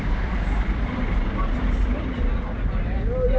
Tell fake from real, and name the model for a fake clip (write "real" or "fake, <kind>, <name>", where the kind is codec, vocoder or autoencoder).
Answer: real